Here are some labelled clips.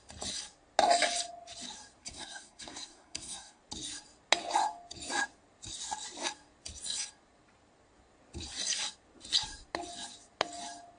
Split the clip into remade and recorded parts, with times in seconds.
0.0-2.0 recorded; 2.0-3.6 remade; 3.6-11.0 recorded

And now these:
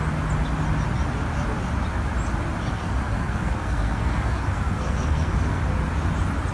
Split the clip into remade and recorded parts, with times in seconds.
0.0-2.7 recorded; 2.7-5.6 remade; 5.6-6.5 recorded

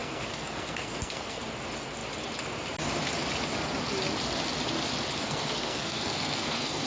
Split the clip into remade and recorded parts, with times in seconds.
0.0-1.4 remade; 1.4-5.2 recorded; 5.2-6.9 remade

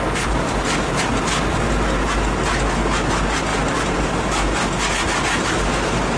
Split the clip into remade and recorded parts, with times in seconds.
0.0-6.2 recorded

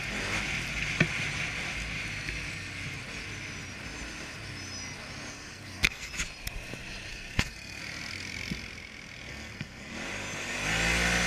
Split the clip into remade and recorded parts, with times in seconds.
0.0-5.3 recorded; 5.3-6.1 remade; 6.1-7.1 recorded; 7.1-7.8 remade; 7.8-9.3 recorded; 9.3-9.9 remade; 9.9-11.3 recorded

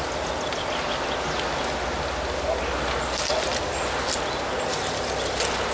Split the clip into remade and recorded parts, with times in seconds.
0.0-5.7 recorded

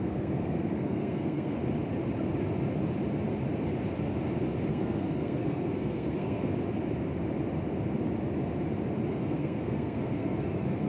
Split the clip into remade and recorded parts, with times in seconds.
0.0-1.6 remade; 1.6-4.7 recorded; 4.7-6.5 remade; 6.5-9.1 recorded; 9.1-10.9 remade

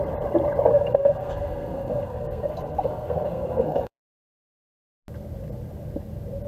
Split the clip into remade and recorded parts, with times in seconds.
0.0-0.7 recorded; 0.7-4.6 remade; 4.6-6.5 recorded